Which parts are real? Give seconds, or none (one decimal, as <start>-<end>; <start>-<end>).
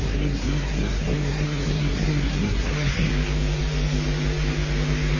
3.1-5.2